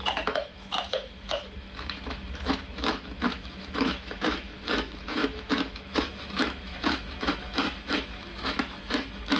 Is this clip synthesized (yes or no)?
yes